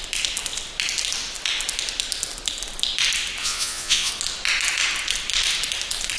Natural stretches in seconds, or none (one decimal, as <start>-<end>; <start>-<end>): 0.0-3.4; 4.1-6.2